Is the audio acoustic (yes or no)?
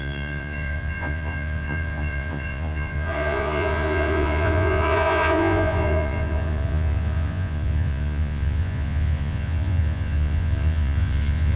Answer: no